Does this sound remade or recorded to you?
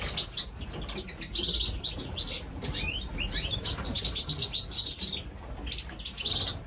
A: recorded